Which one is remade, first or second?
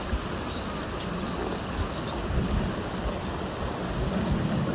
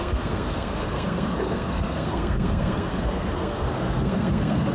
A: second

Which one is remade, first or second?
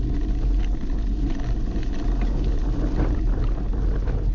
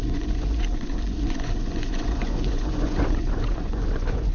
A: second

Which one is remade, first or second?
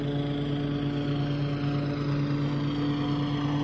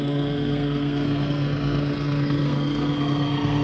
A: second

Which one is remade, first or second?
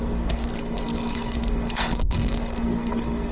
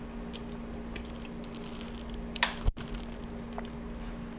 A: first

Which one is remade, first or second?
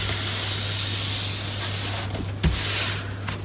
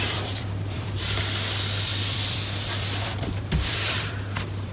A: second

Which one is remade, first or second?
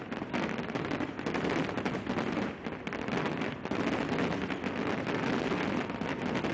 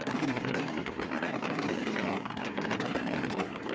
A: second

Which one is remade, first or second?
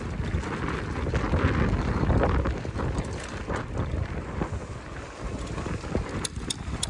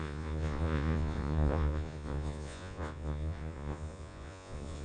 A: second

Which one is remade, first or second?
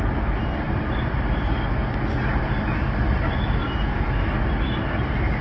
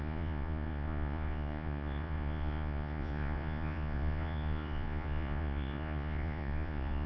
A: second